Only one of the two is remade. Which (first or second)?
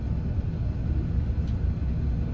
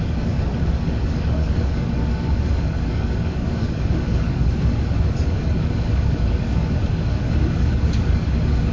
second